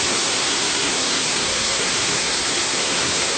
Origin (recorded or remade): remade